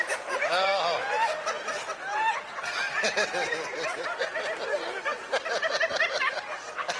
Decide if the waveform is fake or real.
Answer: real